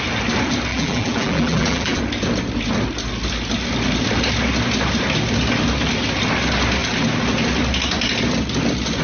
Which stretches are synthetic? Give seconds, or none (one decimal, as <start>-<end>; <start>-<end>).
0.7-2.0